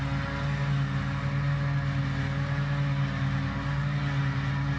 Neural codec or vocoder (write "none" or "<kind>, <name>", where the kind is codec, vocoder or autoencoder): none